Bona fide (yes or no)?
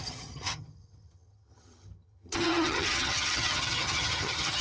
no